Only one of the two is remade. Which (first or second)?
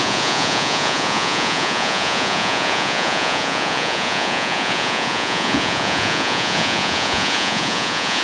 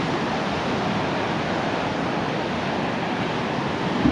first